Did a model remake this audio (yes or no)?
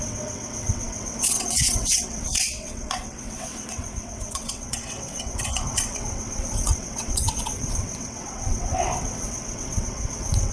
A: yes